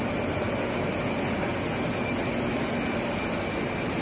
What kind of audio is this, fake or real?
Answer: real